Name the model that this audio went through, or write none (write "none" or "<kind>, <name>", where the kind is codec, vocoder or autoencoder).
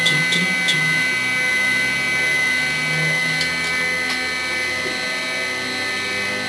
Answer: none